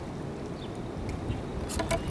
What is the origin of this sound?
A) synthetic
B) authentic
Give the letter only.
B